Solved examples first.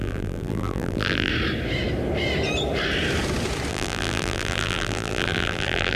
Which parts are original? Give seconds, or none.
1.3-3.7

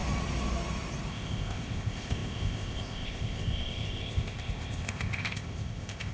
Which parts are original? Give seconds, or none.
0.0-1.1

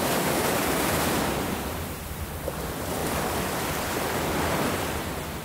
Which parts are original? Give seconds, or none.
3.0-4.7

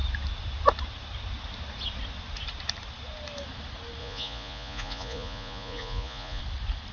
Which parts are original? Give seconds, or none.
0.0-4.0; 6.4-6.9

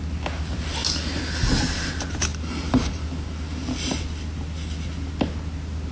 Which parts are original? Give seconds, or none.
0.0-5.9

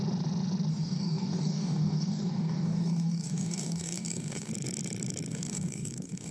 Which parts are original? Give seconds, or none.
0.0-0.7; 4.5-5.3

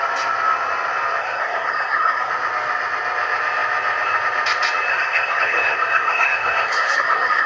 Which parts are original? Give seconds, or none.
0.0-1.2; 2.3-4.9

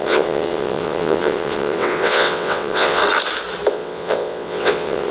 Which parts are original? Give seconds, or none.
3.0-3.7